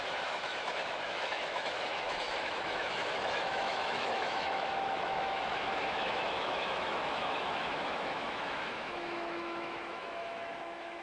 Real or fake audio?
fake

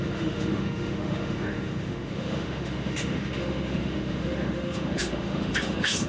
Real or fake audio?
fake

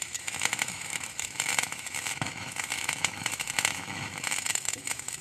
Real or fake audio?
fake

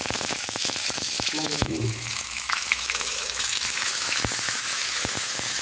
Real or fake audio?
fake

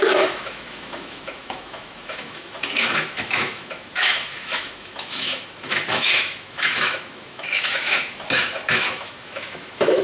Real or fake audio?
fake